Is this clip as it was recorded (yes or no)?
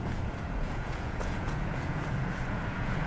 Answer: no